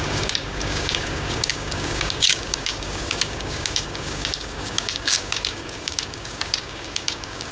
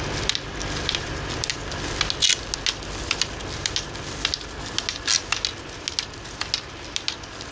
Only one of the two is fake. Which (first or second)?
first